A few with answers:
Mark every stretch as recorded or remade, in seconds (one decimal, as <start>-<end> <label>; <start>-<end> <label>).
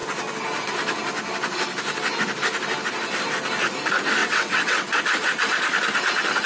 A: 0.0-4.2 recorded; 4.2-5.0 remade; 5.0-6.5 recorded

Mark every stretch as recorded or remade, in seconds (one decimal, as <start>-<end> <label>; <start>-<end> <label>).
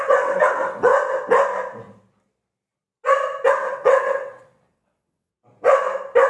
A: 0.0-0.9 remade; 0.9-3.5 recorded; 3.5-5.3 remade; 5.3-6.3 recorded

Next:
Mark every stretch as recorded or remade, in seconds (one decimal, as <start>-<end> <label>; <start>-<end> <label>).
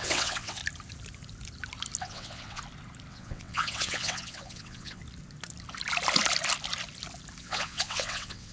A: 0.0-0.6 remade; 0.6-2.0 recorded; 2.0-2.6 remade; 2.6-3.1 recorded; 3.1-5.0 remade; 5.0-7.4 recorded; 7.4-8.5 remade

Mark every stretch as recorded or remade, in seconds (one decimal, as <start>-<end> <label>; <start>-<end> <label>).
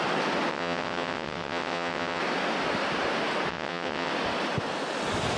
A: 0.0-0.5 recorded; 0.5-2.2 remade; 2.2-3.5 recorded; 3.5-4.1 remade; 4.1-5.4 recorded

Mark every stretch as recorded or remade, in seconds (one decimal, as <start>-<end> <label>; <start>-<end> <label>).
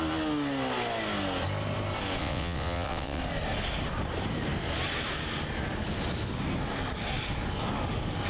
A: 0.0-2.2 recorded; 2.2-3.2 remade; 3.2-8.3 recorded